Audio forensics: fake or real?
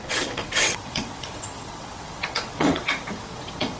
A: fake